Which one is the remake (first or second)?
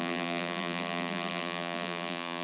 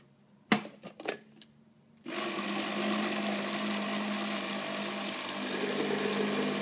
first